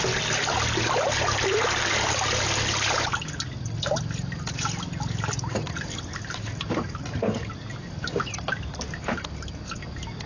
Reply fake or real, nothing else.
real